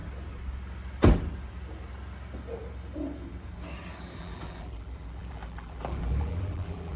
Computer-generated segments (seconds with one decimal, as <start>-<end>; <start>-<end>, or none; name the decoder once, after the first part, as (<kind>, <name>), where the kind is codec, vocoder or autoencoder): 4.2-7.0 (vocoder, BigVGAN v2)